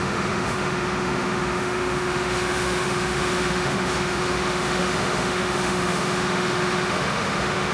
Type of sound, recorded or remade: remade